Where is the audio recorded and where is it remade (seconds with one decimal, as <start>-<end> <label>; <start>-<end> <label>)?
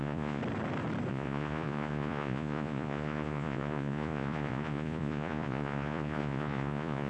0.0-0.4 remade; 0.4-1.1 recorded; 1.1-7.1 remade